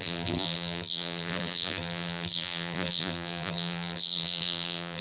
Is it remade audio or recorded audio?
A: remade